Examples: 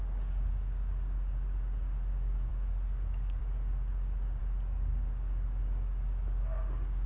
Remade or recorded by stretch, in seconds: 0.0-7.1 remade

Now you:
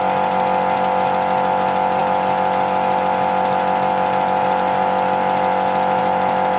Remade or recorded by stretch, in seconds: 0.0-6.6 recorded